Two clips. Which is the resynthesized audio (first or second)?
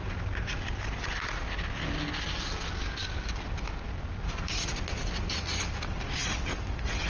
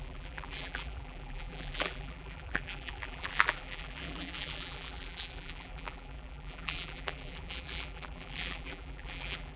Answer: second